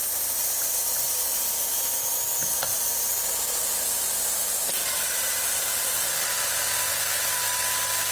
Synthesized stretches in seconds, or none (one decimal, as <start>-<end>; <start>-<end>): 2.7-6.1